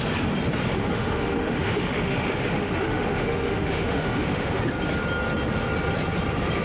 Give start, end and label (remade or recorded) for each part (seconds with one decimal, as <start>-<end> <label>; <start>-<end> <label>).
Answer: 0.0-0.6 recorded; 0.6-4.6 remade; 4.6-6.6 recorded